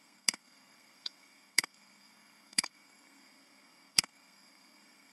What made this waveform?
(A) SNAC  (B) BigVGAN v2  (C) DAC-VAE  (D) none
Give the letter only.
A